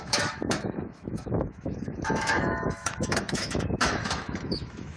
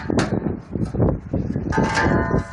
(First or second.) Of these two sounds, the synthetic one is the first